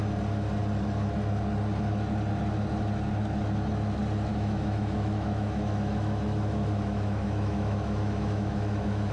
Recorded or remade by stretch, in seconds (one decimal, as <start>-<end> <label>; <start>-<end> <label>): 0.0-4.3 recorded; 4.3-9.1 remade